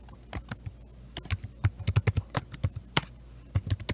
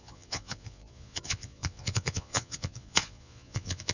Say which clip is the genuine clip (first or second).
first